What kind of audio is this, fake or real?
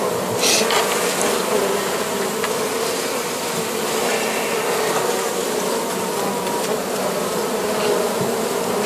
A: real